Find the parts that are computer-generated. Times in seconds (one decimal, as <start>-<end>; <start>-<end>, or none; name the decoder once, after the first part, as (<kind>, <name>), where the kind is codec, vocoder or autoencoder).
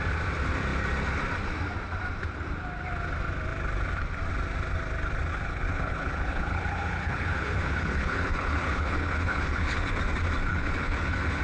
5.3-10.0 (codec, HILCodec); 10.5-11.4